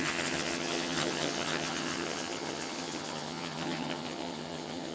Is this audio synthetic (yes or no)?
yes